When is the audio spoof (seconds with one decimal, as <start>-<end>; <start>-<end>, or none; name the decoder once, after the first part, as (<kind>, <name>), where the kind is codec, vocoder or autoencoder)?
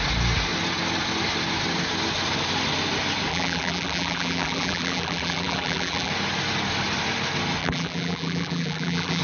3.3-6.1 (vocoder, BigVGAN v2); 7.6-9.2